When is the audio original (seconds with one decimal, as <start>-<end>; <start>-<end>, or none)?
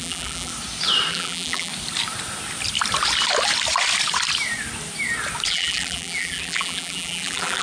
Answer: 0.5-1.1; 1.7-5.5